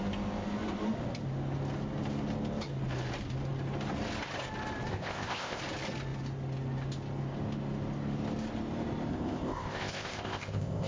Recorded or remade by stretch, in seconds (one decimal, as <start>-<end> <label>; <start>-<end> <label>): 0.0-4.9 recorded; 4.9-5.6 remade; 5.6-9.1 recorded; 9.1-10.9 remade